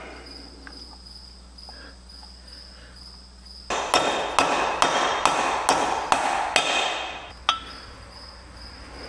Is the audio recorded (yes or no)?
yes